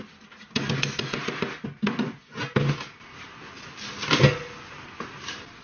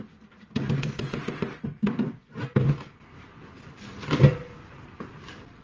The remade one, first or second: second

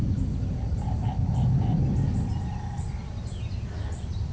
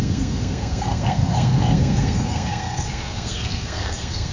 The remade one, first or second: second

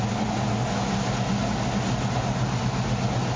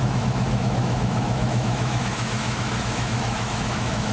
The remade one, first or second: second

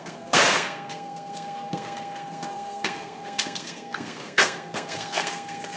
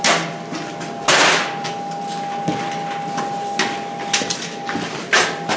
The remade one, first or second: first